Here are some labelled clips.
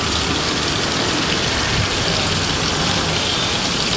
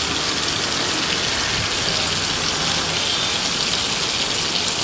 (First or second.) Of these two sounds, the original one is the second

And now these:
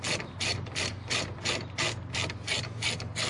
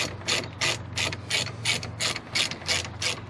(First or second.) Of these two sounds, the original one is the second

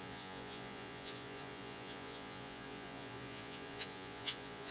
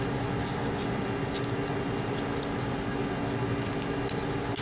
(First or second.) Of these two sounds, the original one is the second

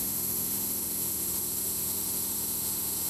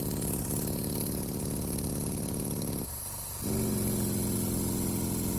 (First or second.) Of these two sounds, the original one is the second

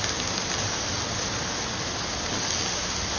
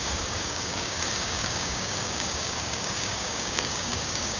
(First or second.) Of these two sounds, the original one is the first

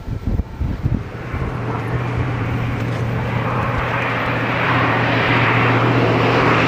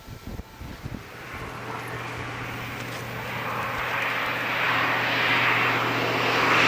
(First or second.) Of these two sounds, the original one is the second